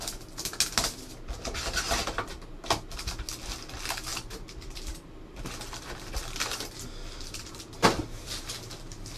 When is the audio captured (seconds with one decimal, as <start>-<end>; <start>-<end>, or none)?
0.0-4.1; 5.6-8.0; 8.5-9.2